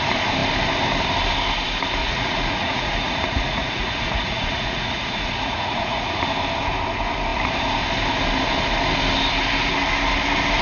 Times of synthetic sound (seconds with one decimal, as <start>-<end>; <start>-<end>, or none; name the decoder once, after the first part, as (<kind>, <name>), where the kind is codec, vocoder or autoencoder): 2.0-6.2 (vocoder, Vocos)